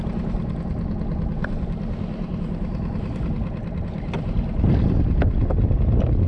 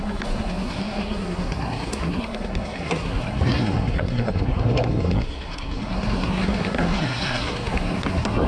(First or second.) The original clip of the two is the first